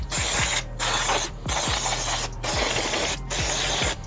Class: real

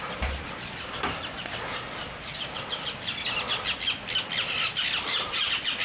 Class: real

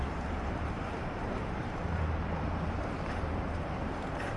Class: fake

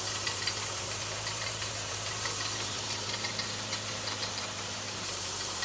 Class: fake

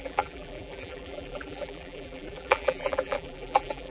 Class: fake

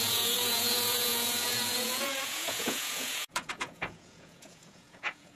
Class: fake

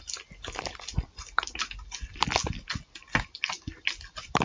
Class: real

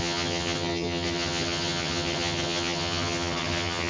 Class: fake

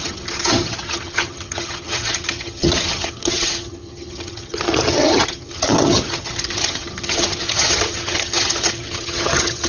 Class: fake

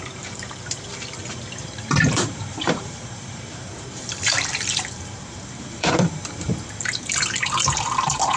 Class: fake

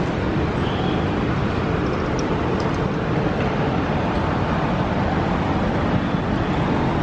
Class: real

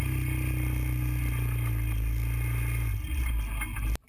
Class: real